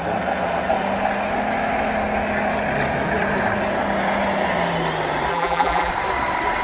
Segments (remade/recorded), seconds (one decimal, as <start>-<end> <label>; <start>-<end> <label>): 0.0-5.3 recorded; 5.3-5.9 remade; 5.9-6.6 recorded